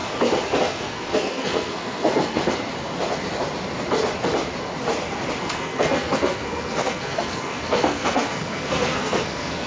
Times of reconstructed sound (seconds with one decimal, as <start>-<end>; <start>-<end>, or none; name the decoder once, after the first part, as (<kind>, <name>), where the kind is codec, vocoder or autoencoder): 0.6-2.4 (codec, SNAC); 5.4-9.7